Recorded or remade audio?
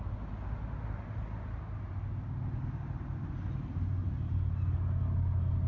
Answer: recorded